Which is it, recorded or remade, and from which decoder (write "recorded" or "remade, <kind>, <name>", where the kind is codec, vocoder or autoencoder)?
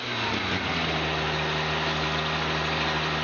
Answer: recorded